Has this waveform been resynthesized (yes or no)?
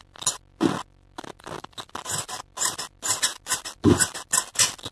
no